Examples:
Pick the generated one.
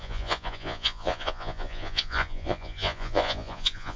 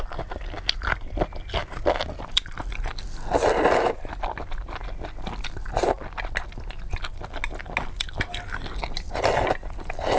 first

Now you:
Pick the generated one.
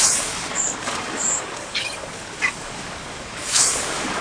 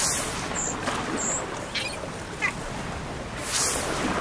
first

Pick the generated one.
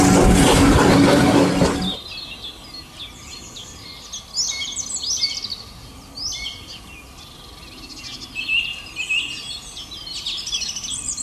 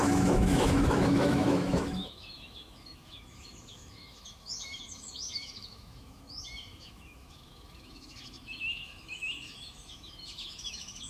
second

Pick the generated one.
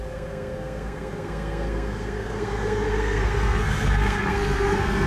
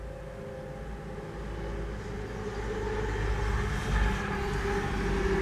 first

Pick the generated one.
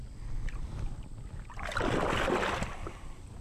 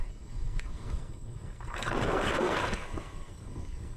second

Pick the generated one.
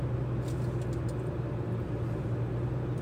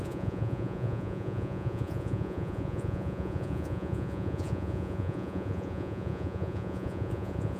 second